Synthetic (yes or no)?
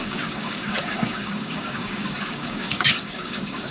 yes